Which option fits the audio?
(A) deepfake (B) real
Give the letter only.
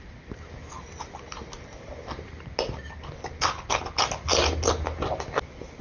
B